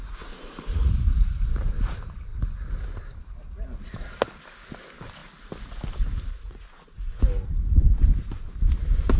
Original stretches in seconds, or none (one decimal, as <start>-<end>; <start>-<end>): 0.9-6.3; 7.2-9.2